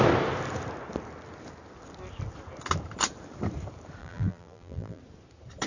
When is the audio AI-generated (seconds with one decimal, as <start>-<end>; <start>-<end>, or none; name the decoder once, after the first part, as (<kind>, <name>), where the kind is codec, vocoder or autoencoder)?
4.0-5.0 (vocoder, BigVGAN v2)